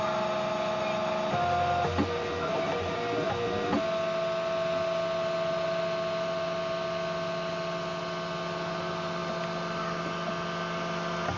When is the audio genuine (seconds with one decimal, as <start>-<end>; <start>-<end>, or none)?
0.0-11.4